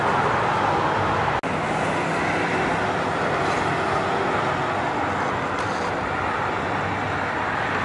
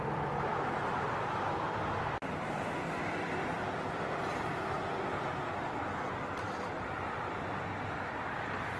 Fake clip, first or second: second